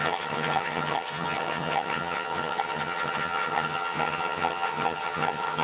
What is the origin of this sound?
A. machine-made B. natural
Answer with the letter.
A